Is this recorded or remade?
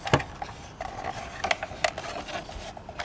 recorded